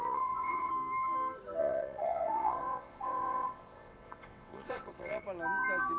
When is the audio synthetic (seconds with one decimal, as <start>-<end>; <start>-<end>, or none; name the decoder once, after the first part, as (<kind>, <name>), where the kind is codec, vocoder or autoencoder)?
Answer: 0.0-0.7 (vocoder, WaveNeXt); 1.6-5.2